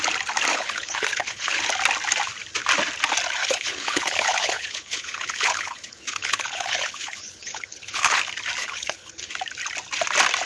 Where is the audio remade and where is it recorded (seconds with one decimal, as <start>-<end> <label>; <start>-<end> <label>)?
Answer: 0.0-0.5 recorded; 0.5-1.6 remade; 1.6-3.4 recorded; 3.4-8.2 remade; 8.2-8.6 recorded; 8.6-9.3 remade; 9.3-10.5 recorded